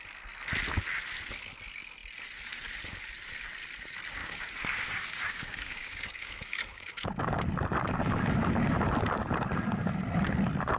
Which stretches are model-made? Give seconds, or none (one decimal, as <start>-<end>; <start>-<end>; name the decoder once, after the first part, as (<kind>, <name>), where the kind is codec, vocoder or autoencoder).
4.2-7.4 (codec, DAC)